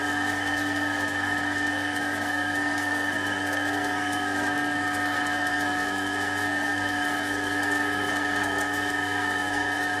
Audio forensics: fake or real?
fake